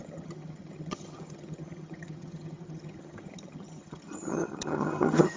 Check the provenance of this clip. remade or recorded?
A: remade